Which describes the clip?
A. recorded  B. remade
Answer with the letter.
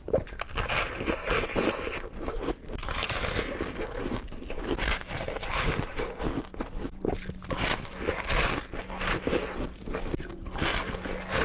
A